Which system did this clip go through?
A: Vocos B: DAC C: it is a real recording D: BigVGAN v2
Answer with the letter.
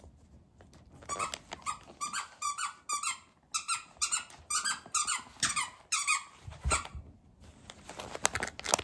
C